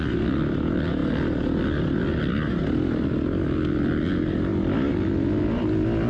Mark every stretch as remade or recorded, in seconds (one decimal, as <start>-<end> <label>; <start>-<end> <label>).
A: 0.0-6.1 recorded